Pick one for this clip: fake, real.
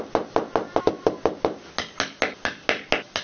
real